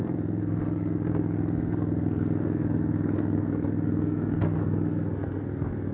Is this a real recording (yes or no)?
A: no